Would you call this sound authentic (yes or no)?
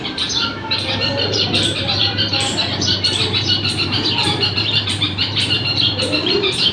no